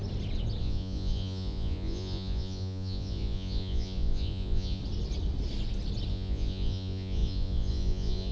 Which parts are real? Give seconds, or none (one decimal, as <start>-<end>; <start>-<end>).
0.0-0.6; 4.8-6.1